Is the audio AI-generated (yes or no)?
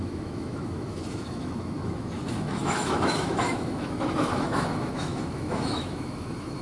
yes